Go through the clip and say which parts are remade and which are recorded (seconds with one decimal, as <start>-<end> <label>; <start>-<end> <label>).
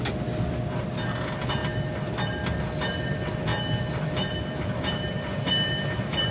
0.0-1.6 recorded; 1.6-2.6 remade; 2.6-3.5 recorded; 3.5-6.3 remade